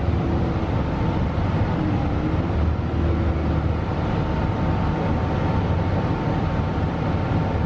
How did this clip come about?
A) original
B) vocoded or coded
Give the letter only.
A